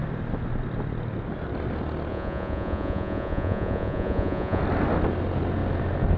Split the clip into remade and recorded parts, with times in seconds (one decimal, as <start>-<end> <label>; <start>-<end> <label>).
0.0-2.1 recorded; 2.1-4.6 remade; 4.6-6.2 recorded